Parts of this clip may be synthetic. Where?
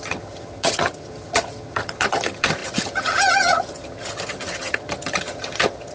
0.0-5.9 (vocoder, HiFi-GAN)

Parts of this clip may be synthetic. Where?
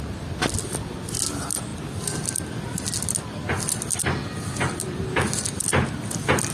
none